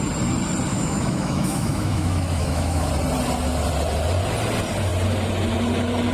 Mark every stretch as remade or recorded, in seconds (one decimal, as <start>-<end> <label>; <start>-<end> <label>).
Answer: 0.0-0.7 recorded; 0.7-2.9 remade; 2.9-6.1 recorded